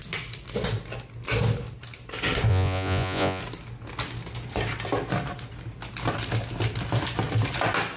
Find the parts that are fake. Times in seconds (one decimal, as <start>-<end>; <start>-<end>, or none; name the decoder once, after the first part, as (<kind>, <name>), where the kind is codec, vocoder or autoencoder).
2.5-3.4 (vocoder, Vocos)